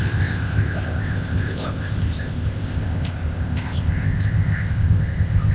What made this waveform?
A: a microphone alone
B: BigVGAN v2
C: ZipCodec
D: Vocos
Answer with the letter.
C